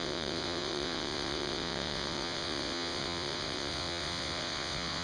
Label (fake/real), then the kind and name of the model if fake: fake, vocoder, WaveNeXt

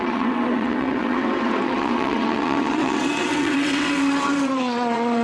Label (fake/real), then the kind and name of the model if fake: fake, vocoder, WaveNeXt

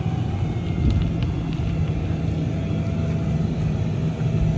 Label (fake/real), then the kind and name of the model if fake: real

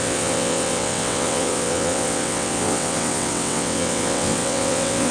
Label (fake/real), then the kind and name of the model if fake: fake, vocoder, WaveNeXt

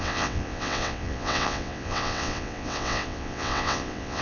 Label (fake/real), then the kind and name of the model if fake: fake, vocoder, WaveNeXt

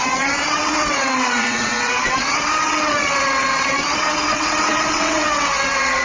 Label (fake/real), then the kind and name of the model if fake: fake, vocoder, WaveNeXt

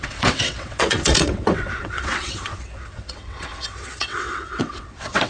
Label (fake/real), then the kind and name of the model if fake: fake, vocoder, WaveNeXt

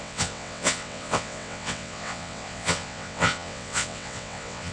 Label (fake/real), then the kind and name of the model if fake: fake, vocoder, WaveNeXt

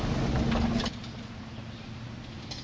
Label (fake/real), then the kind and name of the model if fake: real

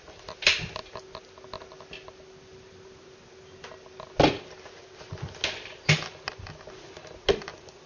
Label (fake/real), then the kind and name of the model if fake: real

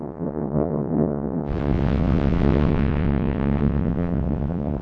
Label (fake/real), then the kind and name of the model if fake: fake, vocoder, WaveNeXt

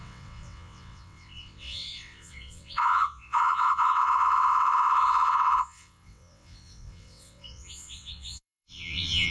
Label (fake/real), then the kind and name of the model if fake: fake, vocoder, WaveNeXt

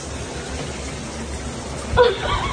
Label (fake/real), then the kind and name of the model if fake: real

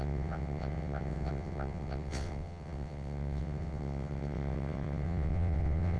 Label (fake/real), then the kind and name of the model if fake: fake, vocoder, WaveNeXt